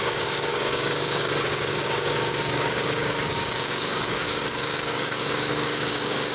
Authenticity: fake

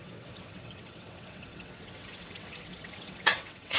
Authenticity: fake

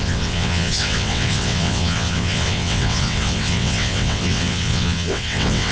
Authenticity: fake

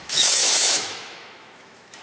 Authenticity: fake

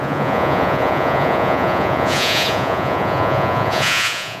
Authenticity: fake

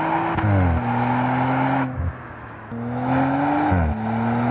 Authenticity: real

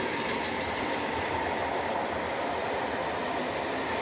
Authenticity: fake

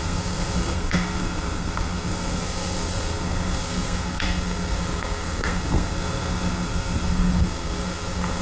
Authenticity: fake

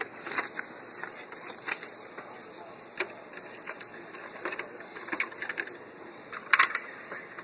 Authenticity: real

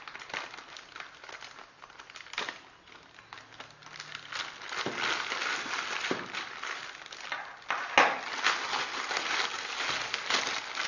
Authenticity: real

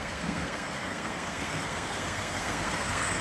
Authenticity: fake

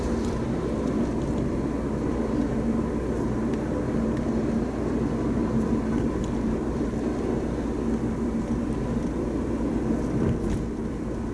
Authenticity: real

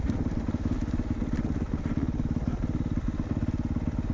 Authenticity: real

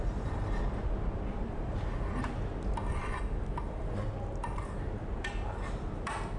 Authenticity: real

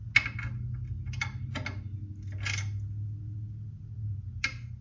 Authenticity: real